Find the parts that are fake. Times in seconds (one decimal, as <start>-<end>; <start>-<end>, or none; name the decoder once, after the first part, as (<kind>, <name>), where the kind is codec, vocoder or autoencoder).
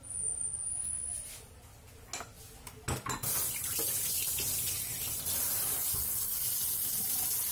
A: none